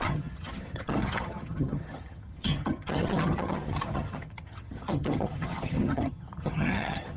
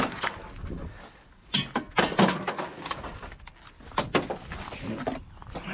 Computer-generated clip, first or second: first